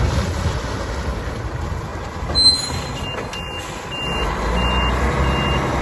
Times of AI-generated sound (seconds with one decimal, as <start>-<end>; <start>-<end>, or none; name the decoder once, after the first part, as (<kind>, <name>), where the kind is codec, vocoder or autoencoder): none